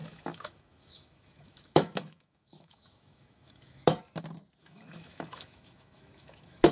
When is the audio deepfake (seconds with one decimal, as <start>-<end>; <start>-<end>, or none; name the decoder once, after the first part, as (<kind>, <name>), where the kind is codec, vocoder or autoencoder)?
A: 0.0-4.0 (autoencoder, DAC-VAE); 4.6-6.7